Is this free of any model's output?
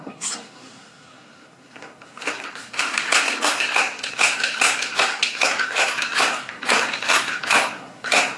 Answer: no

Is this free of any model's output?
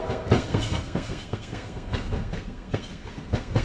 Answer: no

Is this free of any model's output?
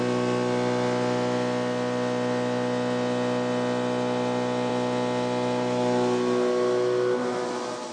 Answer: yes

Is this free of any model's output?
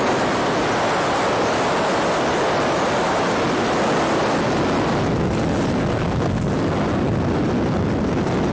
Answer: yes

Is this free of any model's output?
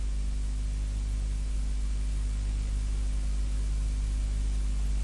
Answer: yes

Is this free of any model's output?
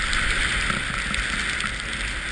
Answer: yes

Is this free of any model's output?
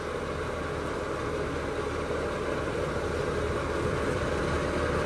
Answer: yes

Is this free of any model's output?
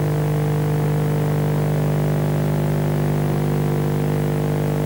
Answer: yes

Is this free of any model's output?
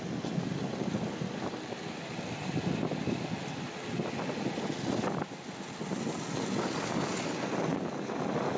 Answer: yes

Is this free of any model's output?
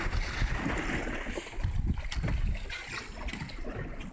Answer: yes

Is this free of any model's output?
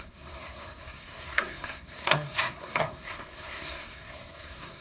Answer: no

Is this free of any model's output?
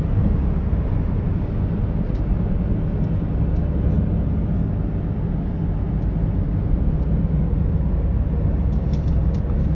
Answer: yes